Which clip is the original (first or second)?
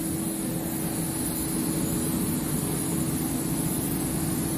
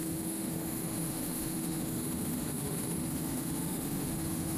first